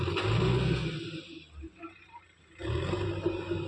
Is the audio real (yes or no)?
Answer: yes